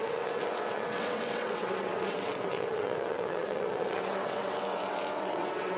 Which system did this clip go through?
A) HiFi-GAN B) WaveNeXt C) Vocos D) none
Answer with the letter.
B